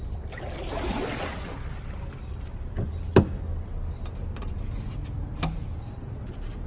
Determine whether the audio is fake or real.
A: real